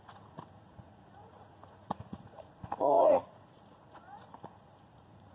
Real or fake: fake